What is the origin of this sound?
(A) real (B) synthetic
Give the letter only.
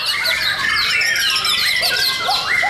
A